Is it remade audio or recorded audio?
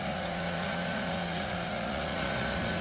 remade